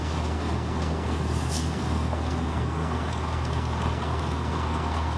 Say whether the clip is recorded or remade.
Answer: remade